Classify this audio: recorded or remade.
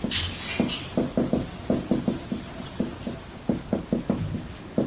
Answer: recorded